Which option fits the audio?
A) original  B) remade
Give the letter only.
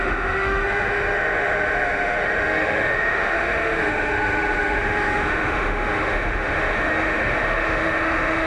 B